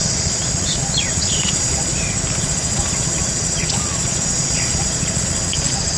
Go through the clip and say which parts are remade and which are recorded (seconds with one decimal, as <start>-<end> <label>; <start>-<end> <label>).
0.0-1.9 remade; 1.9-2.4 recorded; 2.4-6.0 remade